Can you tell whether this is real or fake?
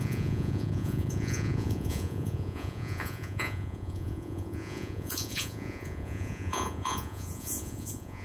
fake